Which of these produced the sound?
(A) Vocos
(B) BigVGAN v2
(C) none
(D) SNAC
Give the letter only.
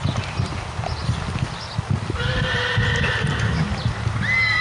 C